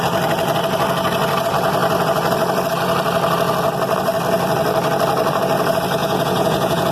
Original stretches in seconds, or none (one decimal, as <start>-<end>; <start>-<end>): 0.0-6.0